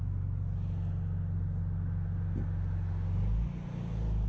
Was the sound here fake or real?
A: real